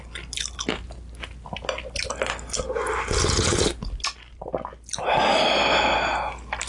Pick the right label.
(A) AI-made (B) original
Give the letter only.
B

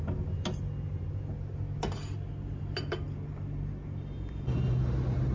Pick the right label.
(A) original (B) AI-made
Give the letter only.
A